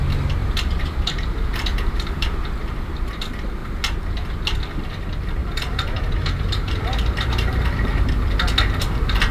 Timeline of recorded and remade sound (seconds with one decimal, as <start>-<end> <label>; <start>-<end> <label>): 0.0-0.4 recorded; 0.4-2.5 remade; 2.5-5.4 recorded; 5.4-8.1 remade; 8.1-9.3 recorded